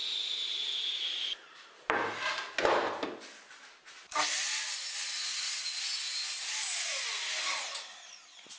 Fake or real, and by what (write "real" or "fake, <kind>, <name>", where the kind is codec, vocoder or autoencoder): real